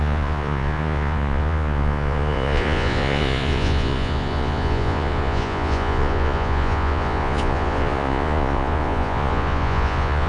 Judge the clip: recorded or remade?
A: remade